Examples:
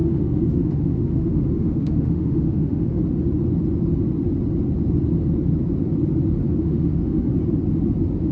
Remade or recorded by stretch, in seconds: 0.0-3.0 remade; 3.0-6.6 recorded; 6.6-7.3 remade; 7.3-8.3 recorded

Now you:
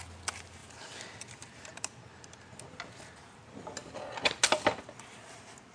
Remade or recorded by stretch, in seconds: 0.0-5.7 recorded

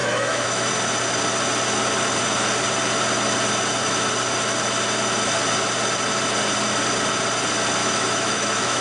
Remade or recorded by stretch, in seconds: 0.0-0.7 remade; 0.7-7.8 recorded; 7.8-8.8 remade